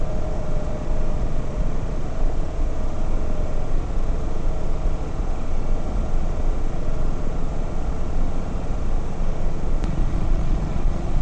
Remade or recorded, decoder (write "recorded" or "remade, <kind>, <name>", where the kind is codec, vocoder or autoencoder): remade, vocoder, Vocos